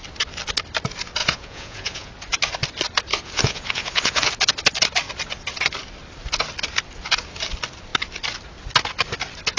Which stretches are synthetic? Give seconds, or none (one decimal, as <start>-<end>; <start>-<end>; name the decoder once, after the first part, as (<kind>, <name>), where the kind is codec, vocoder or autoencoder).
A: 1.2-2.1 (vocoder, Vocos); 3.1-4.3